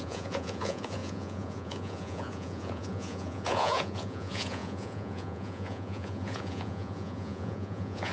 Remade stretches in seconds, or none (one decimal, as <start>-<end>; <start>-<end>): 0.0-8.1